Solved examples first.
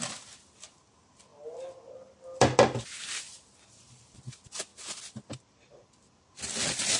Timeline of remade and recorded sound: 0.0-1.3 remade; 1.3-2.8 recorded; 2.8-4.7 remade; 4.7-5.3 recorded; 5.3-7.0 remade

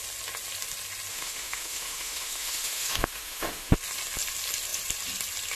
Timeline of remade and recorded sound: 0.0-1.1 recorded; 1.1-3.7 remade; 3.7-5.5 recorded

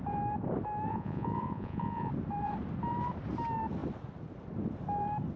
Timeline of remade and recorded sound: 0.0-0.9 recorded; 0.9-2.1 remade; 2.1-5.4 recorded

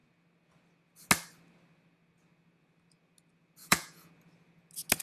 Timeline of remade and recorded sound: 0.0-3.6 recorded; 3.6-4.1 remade; 4.1-5.0 recorded

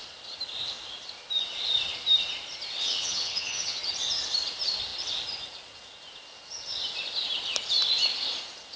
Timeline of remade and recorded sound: 0.0-2.8 recorded; 2.8-3.8 remade; 3.8-8.8 recorded

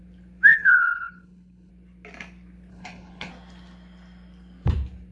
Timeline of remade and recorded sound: 0.0-0.5 recorded; 0.5-1.7 remade; 1.7-2.7 recorded; 2.7-3.3 remade; 3.3-5.1 recorded